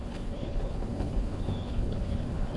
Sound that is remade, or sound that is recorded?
remade